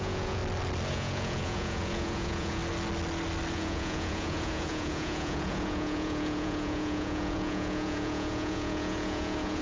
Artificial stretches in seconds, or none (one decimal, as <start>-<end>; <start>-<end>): 0.0-0.4; 0.9-2.6; 3.5-9.6